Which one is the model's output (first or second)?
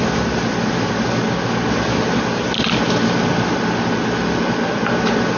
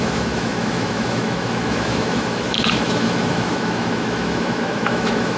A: second